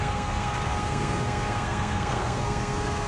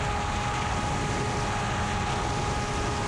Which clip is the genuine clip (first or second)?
second